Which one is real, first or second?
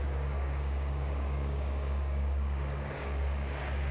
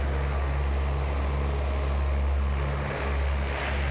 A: second